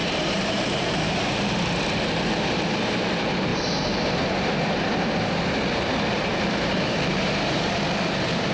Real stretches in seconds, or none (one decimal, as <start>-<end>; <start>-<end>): 1.2-3.5; 5.3-6.3; 7.8-8.5